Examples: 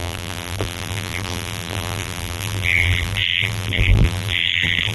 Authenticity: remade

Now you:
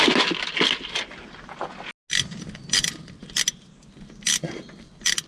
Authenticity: recorded